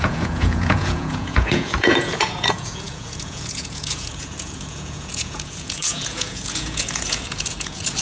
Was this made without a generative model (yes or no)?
no